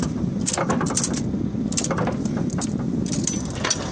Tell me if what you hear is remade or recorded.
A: recorded